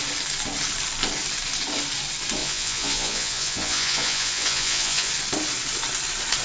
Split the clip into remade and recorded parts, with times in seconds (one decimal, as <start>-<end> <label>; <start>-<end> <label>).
0.0-2.4 recorded; 2.4-5.1 remade; 5.1-6.4 recorded